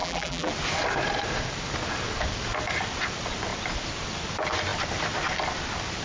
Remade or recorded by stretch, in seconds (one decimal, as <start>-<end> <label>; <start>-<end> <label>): 0.0-0.5 remade; 0.5-6.0 recorded